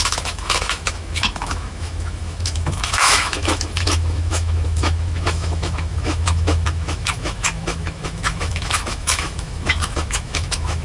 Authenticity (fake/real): fake